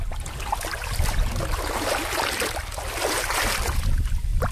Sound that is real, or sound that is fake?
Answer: real